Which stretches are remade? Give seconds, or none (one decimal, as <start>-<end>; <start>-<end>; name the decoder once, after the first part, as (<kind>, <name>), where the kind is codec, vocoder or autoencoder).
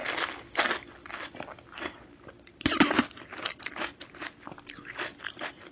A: 0.0-0.7 (vocoder, BigVGAN v2)